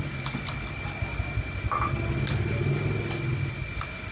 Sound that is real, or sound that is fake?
real